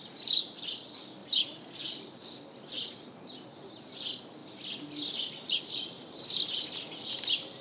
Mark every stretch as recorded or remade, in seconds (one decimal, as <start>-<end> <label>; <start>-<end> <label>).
0.0-7.6 recorded